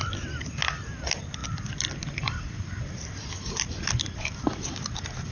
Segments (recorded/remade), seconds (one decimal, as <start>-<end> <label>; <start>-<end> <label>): 0.0-5.3 recorded